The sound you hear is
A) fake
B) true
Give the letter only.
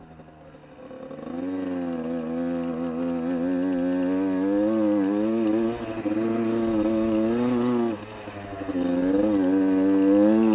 B